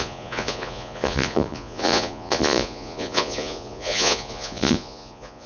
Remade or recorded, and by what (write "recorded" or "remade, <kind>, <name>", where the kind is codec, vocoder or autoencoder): remade, vocoder, Vocos